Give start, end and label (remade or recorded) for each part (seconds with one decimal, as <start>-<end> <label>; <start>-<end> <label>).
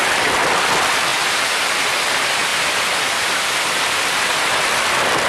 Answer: 0.0-5.3 remade